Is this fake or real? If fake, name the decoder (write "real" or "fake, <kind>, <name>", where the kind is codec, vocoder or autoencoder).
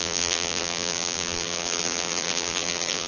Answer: fake, vocoder, BigVGAN v2